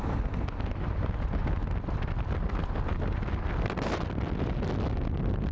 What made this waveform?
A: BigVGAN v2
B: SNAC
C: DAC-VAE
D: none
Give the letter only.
D